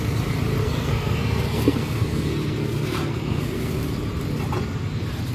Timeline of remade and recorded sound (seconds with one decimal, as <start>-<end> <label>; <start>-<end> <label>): 0.0-0.6 recorded; 0.6-3.8 remade; 3.8-5.3 recorded